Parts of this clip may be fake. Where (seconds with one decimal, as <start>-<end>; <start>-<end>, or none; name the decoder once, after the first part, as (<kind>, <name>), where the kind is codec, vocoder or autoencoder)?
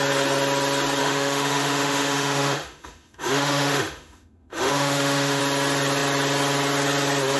1.0-5.4 (autoencoder, DAC-VAE)